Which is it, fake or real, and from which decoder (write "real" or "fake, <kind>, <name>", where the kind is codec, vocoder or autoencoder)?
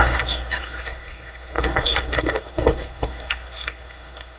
fake, codec, SNAC